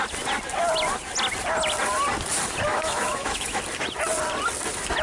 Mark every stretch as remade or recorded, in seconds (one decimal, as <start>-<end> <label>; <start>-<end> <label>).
0.0-2.7 recorded; 2.7-3.6 remade; 3.6-5.0 recorded

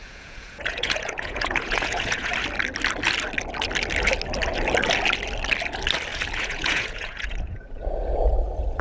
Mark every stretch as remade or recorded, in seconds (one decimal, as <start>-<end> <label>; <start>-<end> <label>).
0.0-2.3 remade; 2.3-6.4 recorded; 6.4-8.8 remade

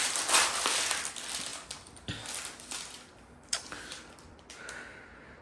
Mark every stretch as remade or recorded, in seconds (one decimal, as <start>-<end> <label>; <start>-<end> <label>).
0.0-1.1 remade; 1.1-1.5 recorded; 1.5-4.7 remade; 4.7-5.4 recorded

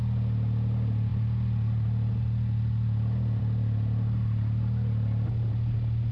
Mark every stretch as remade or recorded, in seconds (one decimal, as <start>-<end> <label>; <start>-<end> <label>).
0.0-6.1 recorded

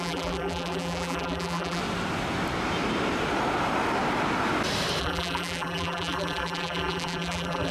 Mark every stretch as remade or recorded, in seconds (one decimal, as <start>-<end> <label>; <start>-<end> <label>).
0.0-1.8 remade; 1.8-5.0 recorded; 5.0-7.7 remade

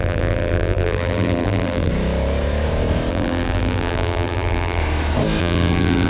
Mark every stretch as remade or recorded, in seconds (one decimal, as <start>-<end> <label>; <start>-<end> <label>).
0.0-1.9 remade; 1.9-3.1 recorded; 3.1-4.8 remade; 4.8-5.4 recorded; 5.4-6.1 remade

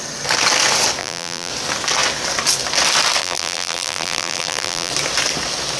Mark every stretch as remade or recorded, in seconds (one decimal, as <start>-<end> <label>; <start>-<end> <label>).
0.0-1.0 recorded; 1.0-1.5 remade; 1.5-3.2 recorded; 3.2-4.9 remade; 4.9-5.8 recorded

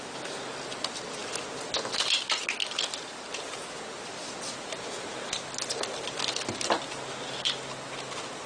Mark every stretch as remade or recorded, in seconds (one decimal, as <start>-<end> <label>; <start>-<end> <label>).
0.0-8.5 recorded